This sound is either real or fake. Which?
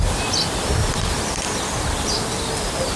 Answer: real